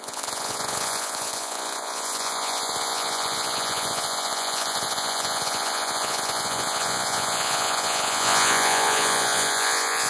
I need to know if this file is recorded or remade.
remade